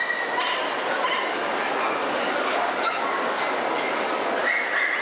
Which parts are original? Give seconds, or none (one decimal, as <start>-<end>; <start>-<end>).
0.0-1.2; 4.4-5.0